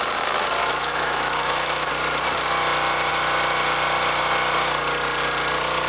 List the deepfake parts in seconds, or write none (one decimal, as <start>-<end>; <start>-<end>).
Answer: 0.6-1.9